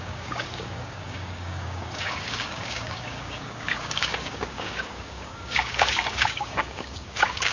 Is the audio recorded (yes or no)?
no